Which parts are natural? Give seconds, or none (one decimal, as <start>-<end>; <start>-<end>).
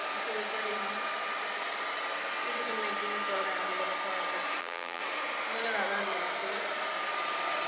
0.0-4.6; 5.0-7.7